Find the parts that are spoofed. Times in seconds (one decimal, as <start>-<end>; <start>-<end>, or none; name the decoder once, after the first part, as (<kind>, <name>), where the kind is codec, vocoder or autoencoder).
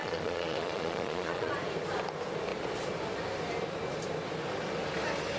0.0-1.5 (vocoder, Vocos)